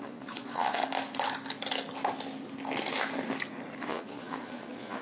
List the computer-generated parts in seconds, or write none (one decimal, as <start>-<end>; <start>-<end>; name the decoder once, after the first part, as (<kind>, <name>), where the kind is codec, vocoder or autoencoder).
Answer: 0.0-0.8 (vocoder, Vocos); 3.8-5.0